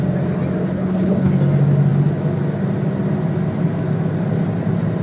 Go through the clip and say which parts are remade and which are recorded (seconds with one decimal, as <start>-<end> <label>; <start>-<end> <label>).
0.0-0.6 recorded; 0.6-1.3 remade; 1.3-5.0 recorded